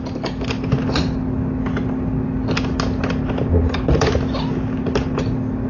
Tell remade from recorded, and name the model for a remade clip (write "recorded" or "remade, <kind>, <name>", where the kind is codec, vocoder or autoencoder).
recorded